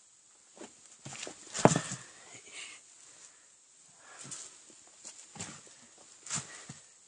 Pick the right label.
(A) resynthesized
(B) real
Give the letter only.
B